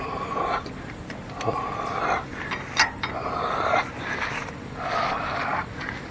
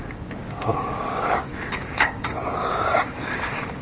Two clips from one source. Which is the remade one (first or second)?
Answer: second